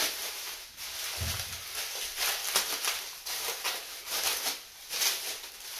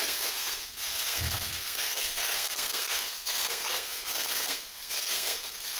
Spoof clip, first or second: second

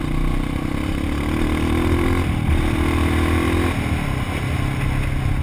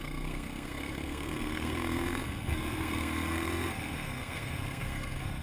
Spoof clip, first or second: second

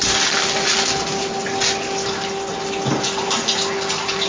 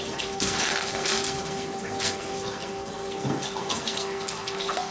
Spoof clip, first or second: second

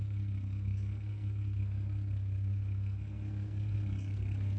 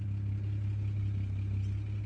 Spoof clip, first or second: first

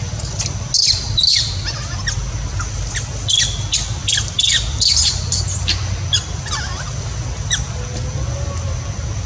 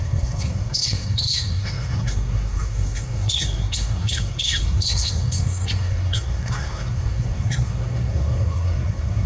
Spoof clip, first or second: second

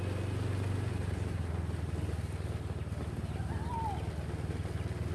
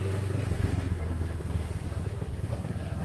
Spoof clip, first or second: second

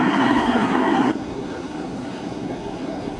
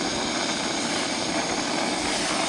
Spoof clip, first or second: first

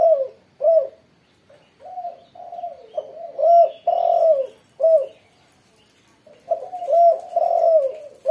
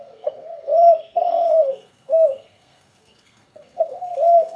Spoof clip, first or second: second